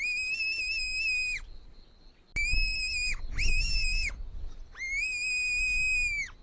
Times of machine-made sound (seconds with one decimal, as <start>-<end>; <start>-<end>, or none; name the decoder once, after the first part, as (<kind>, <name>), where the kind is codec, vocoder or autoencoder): none

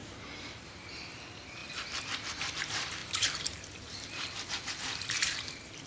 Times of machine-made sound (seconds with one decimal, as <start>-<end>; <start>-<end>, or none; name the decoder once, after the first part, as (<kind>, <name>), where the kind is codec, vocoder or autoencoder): 0.0-1.6 (vocoder, BigVGAN v2); 2.6-5.9

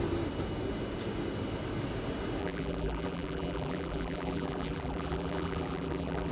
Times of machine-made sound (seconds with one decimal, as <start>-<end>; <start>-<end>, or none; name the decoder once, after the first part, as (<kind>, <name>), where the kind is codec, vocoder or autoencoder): 2.4-6.3 (vocoder, BigVGAN v2)